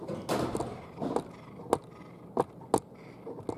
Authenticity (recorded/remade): recorded